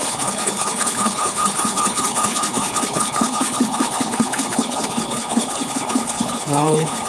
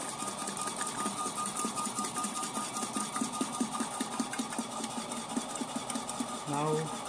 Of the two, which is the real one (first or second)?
second